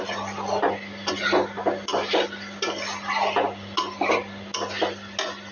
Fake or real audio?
real